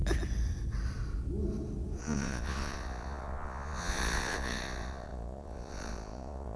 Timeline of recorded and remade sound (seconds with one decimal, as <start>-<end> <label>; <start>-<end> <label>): 0.0-2.0 recorded; 2.0-6.6 remade